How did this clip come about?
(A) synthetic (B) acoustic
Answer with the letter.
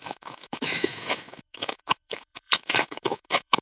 A